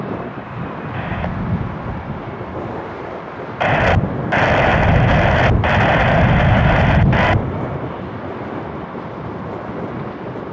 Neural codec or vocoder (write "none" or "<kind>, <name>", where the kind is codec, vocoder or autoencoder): none